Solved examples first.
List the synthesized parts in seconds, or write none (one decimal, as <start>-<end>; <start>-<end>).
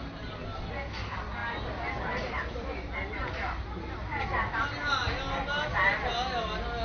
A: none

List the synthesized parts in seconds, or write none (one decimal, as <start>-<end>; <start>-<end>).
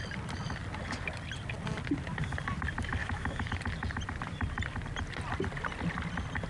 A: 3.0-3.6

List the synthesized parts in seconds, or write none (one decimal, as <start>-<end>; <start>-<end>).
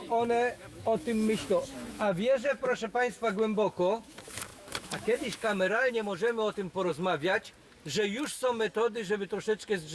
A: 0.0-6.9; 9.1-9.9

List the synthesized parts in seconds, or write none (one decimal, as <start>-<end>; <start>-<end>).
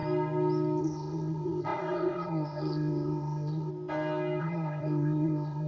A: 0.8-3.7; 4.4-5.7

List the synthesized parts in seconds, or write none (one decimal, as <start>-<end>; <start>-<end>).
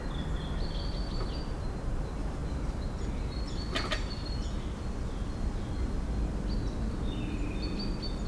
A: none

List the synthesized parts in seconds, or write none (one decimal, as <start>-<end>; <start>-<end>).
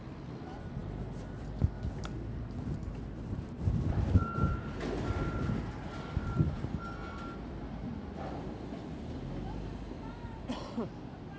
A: none